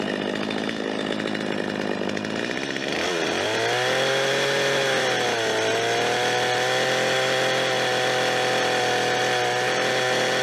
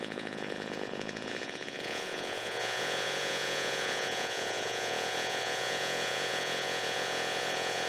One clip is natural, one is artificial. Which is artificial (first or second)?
second